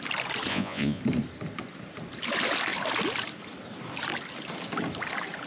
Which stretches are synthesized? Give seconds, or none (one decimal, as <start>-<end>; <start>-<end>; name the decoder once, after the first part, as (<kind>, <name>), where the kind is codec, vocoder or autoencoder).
0.5-1.0 (vocoder, Vocos)

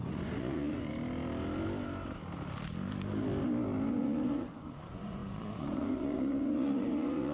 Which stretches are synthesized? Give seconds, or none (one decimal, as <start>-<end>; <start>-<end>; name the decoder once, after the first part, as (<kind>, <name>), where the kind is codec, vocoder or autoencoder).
0.0-0.9 (vocoder, Vocos); 3.9-7.3